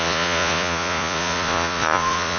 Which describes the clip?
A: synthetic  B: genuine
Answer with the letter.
A